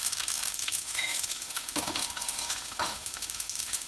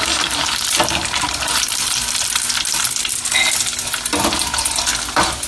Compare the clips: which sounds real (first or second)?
second